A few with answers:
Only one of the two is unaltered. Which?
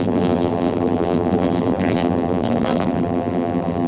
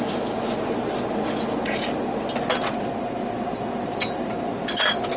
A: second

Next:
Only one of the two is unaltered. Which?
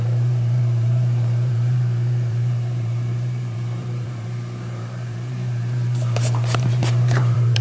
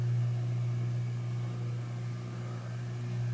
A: second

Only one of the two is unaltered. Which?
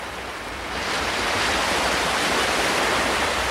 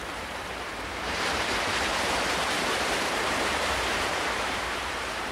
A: first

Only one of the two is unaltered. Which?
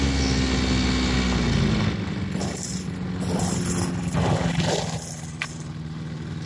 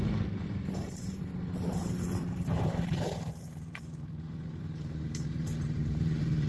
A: first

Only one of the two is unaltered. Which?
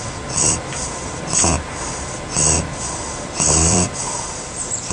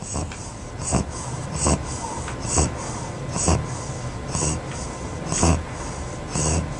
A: second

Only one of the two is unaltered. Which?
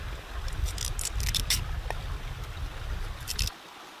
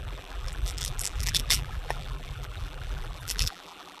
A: first